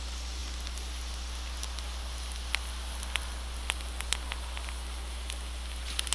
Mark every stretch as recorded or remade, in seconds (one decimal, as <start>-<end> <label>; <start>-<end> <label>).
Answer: 0.0-6.1 recorded

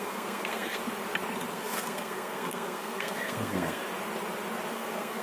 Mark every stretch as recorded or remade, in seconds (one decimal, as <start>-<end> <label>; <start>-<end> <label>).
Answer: 0.0-0.8 remade; 0.8-1.5 recorded; 1.5-3.8 remade; 3.8-4.7 recorded; 4.7-5.2 remade

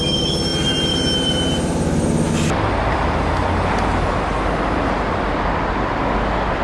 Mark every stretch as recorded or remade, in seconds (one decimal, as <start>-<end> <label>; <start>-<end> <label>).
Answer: 0.0-6.6 recorded

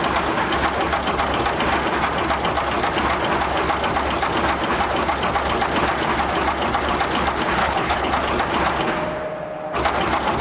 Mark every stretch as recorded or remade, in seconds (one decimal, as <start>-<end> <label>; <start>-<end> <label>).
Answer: 0.0-7.6 recorded; 7.6-8.1 remade; 8.1-10.4 recorded